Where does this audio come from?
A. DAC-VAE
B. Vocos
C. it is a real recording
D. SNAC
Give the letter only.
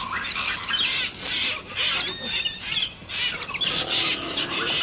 C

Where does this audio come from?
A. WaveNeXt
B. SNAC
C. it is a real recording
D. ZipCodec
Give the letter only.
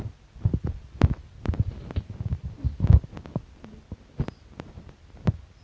C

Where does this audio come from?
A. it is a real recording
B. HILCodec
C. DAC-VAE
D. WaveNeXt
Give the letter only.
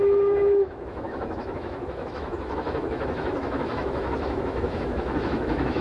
C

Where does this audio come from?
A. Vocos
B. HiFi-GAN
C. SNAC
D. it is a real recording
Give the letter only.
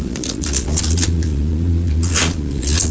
A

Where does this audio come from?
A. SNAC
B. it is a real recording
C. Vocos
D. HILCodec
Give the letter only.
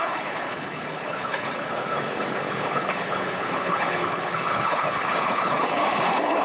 D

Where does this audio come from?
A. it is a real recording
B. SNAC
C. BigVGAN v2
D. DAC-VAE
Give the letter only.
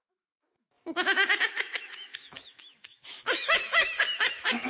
D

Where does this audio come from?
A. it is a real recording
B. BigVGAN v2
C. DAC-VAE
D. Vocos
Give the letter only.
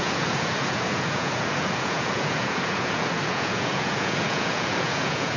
D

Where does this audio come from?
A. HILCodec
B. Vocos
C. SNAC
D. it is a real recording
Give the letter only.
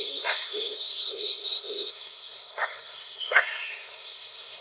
C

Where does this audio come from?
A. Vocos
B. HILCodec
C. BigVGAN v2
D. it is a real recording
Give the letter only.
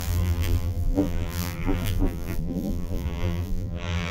C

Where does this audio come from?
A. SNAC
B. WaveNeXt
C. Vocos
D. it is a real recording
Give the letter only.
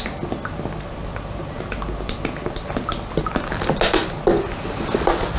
D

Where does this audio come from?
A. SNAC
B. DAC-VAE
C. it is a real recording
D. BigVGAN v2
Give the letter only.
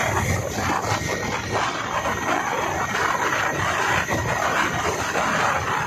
C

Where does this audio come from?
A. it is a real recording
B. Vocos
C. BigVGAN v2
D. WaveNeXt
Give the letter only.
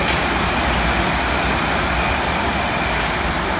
A